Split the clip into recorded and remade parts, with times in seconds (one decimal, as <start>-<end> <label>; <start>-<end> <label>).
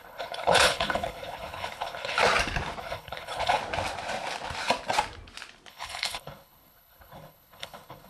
0.0-2.2 remade; 2.2-2.8 recorded; 2.8-3.6 remade; 3.6-5.7 recorded; 5.7-8.1 remade